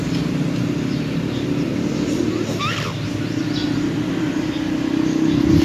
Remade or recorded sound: recorded